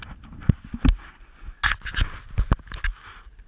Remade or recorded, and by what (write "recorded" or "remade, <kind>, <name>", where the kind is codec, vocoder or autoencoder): recorded